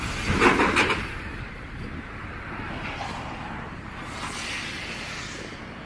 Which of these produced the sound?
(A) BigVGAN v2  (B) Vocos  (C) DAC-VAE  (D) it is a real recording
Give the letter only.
D